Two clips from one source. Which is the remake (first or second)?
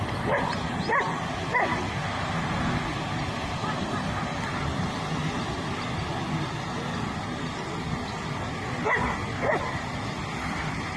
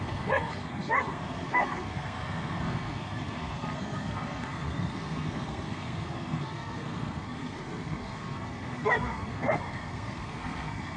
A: second